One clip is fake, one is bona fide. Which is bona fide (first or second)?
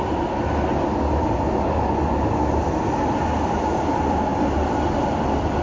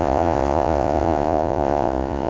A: first